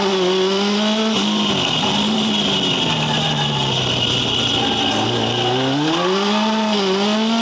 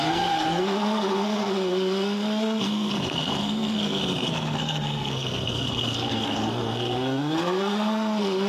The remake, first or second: second